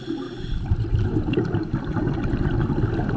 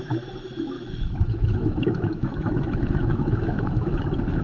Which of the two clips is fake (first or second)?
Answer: second